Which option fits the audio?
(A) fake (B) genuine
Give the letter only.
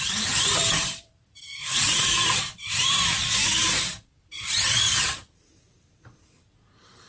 A